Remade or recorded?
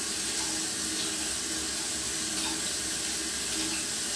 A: recorded